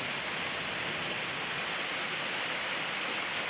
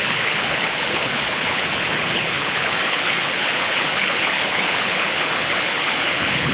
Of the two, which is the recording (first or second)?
first